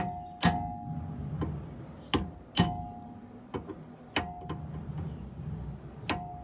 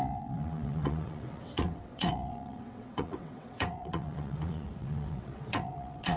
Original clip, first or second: first